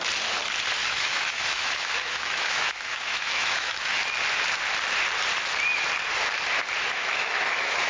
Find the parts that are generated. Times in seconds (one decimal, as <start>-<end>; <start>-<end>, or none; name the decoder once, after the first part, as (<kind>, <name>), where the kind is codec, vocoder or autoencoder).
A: 0.8-4.0 (autoencoder, DAC-VAE); 6.8-7.9